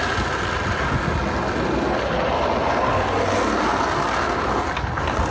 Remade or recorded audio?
recorded